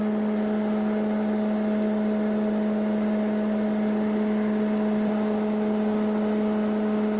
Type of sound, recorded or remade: recorded